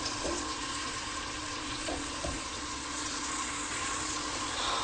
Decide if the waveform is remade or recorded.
remade